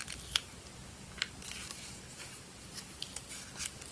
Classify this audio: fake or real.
real